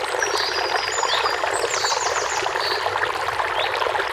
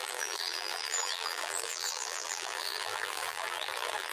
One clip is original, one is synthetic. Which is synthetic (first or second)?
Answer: second